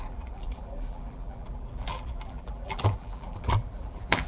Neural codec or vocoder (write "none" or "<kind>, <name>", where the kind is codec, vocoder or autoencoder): vocoder, BigVGAN v2